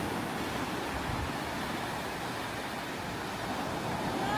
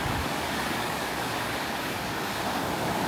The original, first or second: first